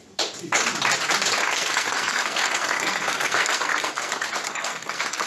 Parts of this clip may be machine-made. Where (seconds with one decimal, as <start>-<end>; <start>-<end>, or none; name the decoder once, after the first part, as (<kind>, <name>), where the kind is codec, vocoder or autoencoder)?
1.4-4.1 (codec, SNAC); 4.5-5.3